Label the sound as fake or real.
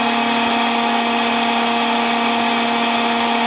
real